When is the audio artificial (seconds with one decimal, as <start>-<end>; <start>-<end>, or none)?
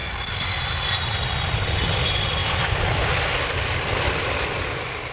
0.7-5.1